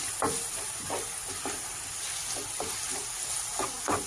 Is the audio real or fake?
real